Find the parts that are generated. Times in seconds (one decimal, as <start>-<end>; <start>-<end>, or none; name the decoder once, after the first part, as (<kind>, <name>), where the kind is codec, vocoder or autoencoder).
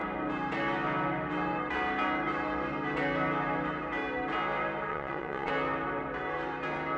4.9-5.5 (vocoder, WaveNeXt)